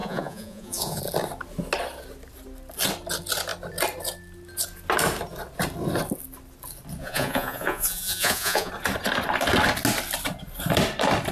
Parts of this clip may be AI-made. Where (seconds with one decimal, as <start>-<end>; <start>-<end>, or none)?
0.0-1.0; 7.0-8.7